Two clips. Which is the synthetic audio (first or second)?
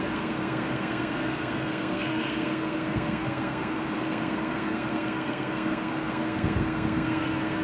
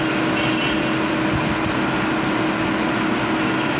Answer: first